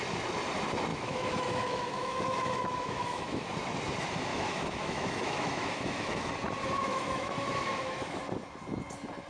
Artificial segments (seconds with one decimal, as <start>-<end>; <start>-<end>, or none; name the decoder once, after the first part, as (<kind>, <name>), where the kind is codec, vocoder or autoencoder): 0.9-3.5 (autoencoder, DAC-VAE); 4.3-6.3; 6.8-8.2